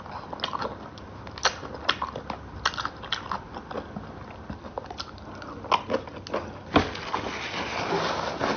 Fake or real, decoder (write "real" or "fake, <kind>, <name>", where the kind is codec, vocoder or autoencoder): real